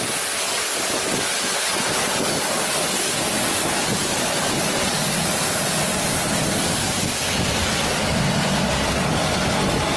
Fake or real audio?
real